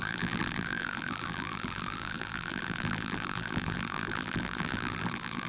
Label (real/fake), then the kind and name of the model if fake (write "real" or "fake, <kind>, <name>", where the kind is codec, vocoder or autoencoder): fake, vocoder, BigVGAN v2